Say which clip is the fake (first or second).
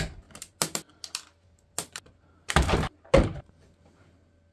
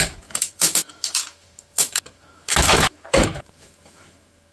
second